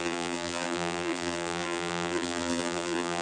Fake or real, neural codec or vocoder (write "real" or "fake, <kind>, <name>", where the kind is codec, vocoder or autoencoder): fake, vocoder, BigVGAN v2